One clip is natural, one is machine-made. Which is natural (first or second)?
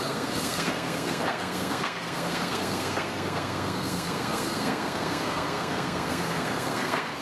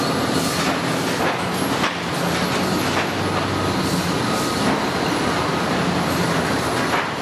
second